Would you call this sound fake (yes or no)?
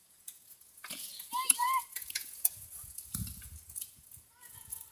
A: yes